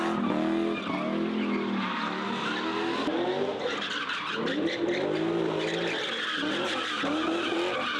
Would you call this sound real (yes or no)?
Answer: yes